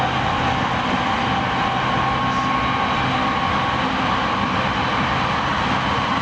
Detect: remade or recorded recorded